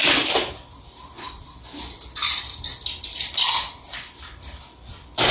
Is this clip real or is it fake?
real